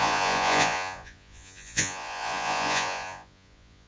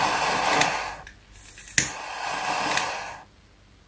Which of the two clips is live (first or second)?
second